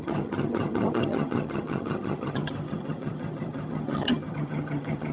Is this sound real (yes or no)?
no